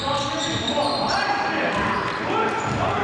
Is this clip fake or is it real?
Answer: real